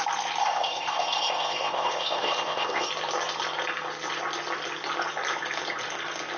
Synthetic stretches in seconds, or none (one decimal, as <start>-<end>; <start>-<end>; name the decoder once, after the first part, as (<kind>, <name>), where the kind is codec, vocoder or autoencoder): 0.4-2.9 (codec, ZipCodec)